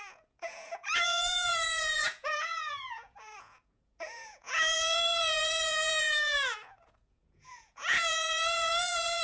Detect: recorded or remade remade